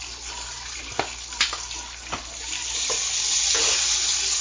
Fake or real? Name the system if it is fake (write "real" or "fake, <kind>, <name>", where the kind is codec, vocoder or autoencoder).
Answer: real